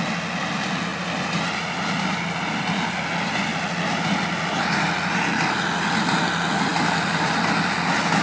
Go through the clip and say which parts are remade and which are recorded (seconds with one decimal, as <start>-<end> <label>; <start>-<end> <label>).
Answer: 0.0-8.2 recorded